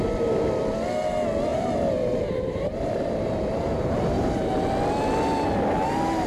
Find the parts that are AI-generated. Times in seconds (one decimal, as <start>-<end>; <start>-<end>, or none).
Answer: 1.5-4.5